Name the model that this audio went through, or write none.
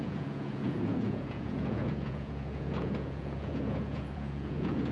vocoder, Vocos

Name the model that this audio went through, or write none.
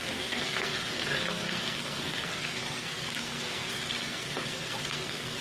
codec, SNAC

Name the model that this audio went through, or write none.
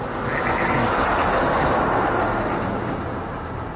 none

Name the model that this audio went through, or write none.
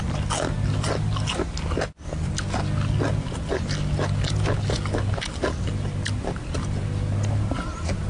none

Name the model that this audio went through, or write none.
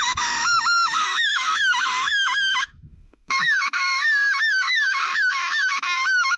autoencoder, DAC-VAE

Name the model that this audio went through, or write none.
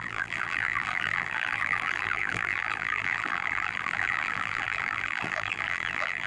vocoder, BigVGAN v2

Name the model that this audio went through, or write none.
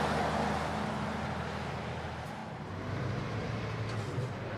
none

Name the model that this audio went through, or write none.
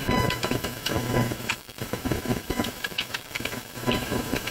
autoencoder, DAC-VAE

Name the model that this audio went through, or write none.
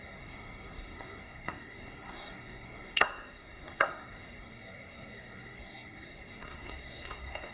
codec, SNAC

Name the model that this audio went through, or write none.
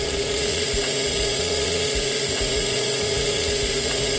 vocoder, Vocos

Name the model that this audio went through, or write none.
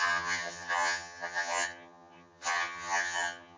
vocoder, HiFi-GAN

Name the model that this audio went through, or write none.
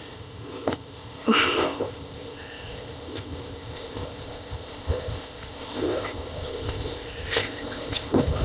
codec, ZipCodec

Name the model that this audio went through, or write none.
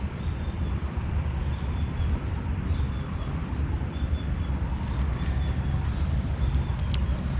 none